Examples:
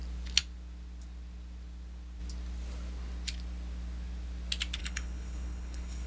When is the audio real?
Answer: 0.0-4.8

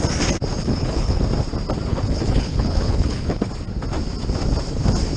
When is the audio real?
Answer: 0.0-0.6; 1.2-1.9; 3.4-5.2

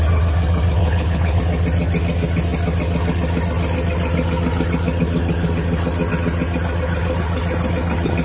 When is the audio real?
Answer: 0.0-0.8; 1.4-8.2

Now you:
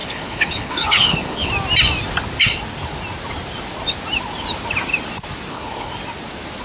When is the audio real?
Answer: 1.5-5.5; 5.9-6.6

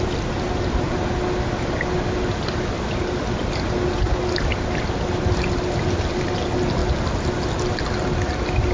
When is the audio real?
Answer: 0.0-8.7

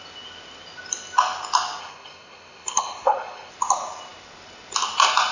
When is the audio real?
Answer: 0.0-1.8; 3.5-5.3